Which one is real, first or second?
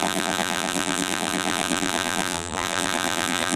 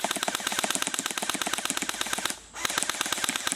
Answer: second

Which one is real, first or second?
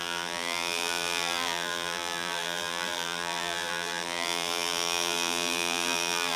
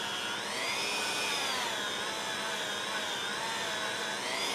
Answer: second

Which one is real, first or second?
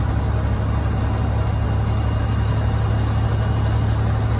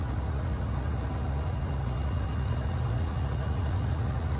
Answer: first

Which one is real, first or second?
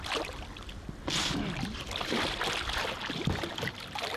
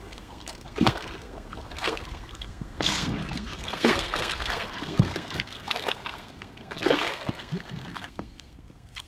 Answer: first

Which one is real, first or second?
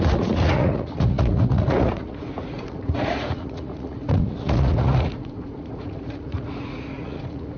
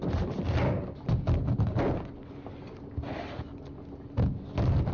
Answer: second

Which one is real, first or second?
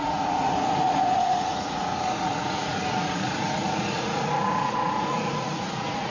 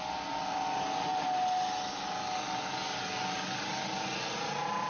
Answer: second